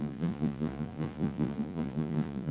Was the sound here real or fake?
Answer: fake